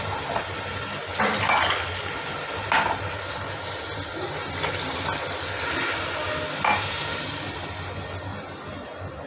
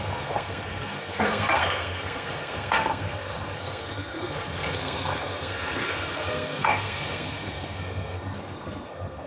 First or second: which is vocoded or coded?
second